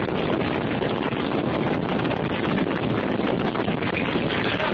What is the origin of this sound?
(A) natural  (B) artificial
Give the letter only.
A